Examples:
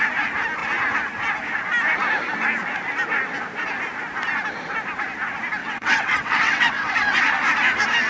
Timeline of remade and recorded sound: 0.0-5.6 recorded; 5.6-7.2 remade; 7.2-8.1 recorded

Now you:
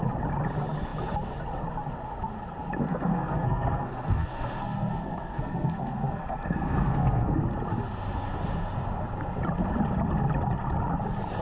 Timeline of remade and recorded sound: 0.0-2.8 recorded; 2.8-7.4 remade; 7.4-11.4 recorded

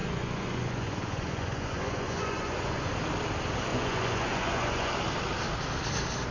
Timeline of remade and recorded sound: 0.0-2.9 remade; 2.9-3.7 recorded; 3.7-4.9 remade; 4.9-6.3 recorded

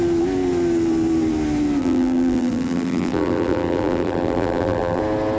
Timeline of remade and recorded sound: 0.0-1.8 recorded; 1.8-5.0 remade; 5.0-5.4 recorded

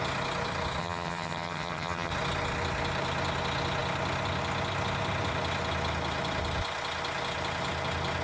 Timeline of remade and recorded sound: 0.0-0.8 recorded; 0.8-2.1 remade; 2.1-8.2 recorded

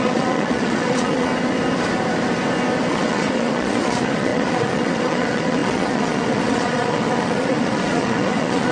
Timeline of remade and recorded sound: 0.0-1.3 remade; 1.3-2.9 recorded; 2.9-8.7 remade

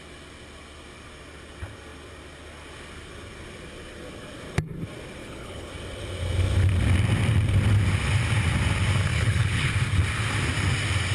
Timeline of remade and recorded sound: 0.0-5.2 recorded; 5.2-5.7 remade; 5.7-9.1 recorded; 9.1-9.7 remade; 9.7-11.1 recorded